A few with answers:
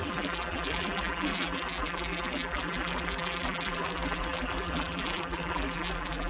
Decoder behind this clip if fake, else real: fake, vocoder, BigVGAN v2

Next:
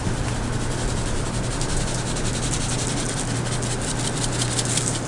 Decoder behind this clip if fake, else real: real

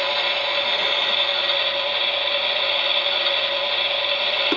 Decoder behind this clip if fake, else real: real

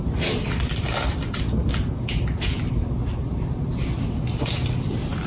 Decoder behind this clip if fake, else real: real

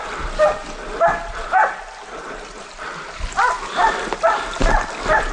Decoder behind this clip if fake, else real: real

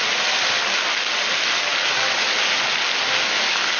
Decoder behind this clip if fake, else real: real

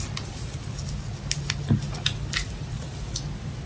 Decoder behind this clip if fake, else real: real